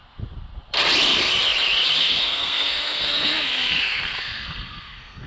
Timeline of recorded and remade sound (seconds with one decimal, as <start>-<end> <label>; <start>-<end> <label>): 0.0-2.0 recorded; 2.0-5.3 remade